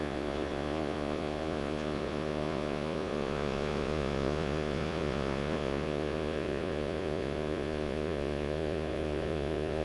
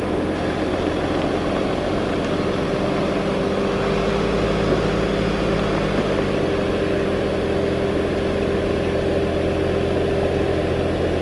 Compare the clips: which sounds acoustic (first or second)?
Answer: second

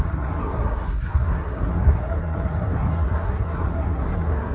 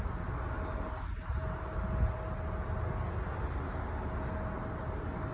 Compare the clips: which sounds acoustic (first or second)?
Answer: second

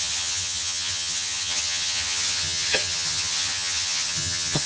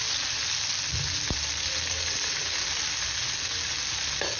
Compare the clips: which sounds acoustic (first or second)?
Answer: second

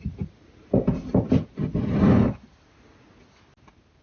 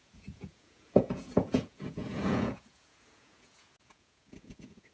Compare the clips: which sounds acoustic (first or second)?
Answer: first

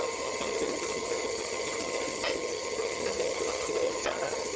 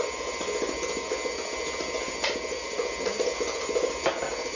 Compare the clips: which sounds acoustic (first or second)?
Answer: second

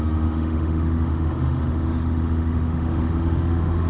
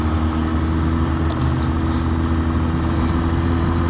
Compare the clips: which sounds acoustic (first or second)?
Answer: second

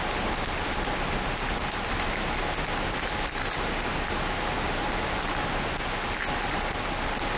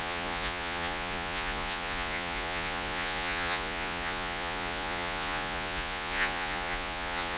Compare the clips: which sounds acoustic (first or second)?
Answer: first